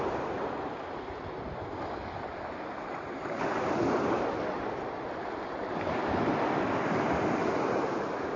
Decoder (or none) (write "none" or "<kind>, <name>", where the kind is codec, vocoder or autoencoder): none